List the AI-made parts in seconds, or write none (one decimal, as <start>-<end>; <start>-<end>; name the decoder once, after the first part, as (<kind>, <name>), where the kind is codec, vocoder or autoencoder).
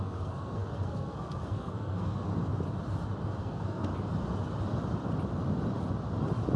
0.0-2.3 (codec, SNAC); 3.4-3.9